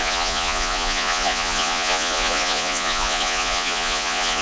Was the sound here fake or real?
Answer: fake